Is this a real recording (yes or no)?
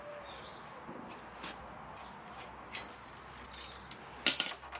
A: yes